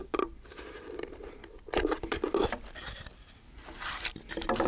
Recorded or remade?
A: remade